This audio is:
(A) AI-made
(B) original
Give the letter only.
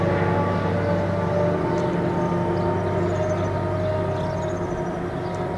B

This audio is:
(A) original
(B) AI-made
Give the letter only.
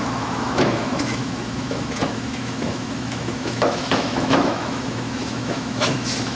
B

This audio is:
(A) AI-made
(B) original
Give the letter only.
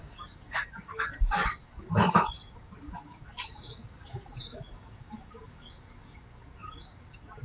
A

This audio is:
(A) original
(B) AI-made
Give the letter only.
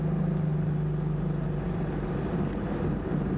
A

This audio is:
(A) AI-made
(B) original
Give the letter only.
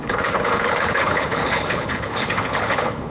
A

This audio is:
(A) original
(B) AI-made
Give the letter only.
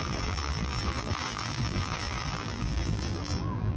B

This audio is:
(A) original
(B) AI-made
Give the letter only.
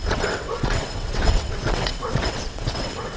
B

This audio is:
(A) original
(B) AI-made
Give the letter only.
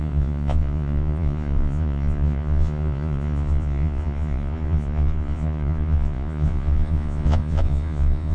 B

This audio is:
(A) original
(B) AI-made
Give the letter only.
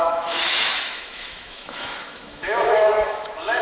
B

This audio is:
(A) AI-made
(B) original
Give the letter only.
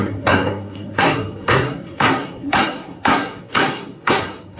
A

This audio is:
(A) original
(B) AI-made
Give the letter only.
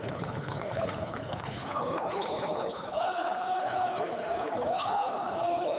B